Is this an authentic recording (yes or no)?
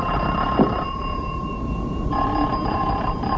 no